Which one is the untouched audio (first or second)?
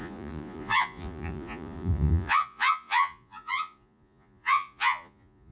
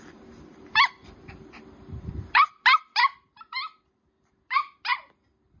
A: second